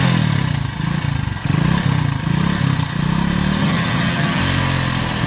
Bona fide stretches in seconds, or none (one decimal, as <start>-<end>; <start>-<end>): 0.0-3.6; 4.4-5.3